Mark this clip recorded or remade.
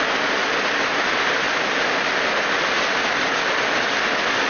recorded